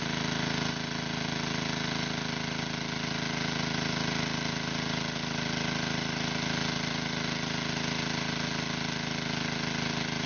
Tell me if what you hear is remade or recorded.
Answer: recorded